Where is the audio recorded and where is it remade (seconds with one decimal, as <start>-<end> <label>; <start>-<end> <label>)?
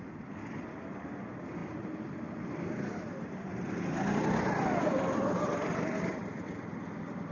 0.0-7.3 recorded